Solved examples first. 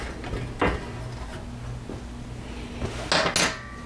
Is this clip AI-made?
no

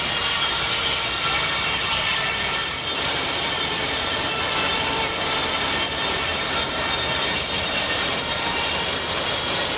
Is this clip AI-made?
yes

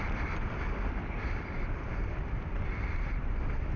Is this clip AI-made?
yes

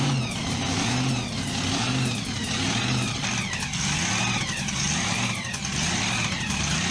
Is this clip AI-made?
no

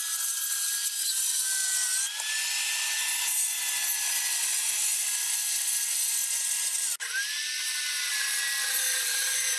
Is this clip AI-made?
no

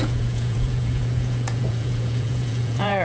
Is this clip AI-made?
yes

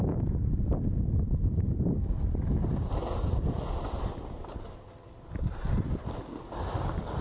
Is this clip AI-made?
no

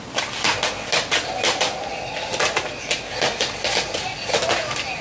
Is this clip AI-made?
no